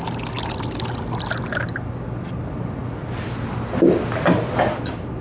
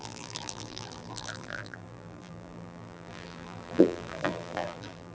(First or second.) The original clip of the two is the first